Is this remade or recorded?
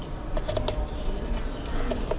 recorded